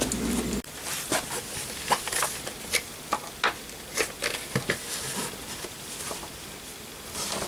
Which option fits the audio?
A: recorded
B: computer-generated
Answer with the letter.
A